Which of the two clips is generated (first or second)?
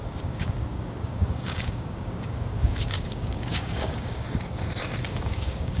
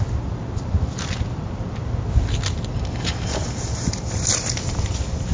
first